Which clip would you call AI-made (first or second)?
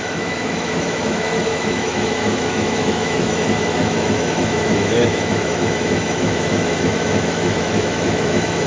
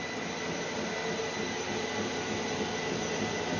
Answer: first